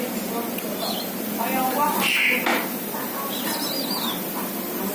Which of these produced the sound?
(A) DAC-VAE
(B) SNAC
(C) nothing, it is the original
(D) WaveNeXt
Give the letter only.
C